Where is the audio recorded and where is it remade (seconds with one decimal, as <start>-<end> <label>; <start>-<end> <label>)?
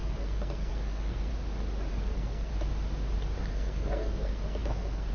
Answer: 0.0-1.3 remade; 1.3-1.9 recorded; 1.9-2.5 remade; 2.5-3.5 recorded; 3.5-5.1 remade